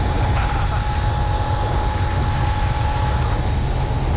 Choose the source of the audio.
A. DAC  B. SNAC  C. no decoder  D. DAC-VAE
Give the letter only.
C